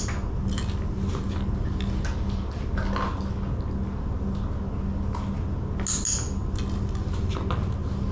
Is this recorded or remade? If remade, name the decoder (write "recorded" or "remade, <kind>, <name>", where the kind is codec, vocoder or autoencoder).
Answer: recorded